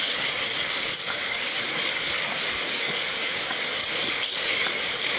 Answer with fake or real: fake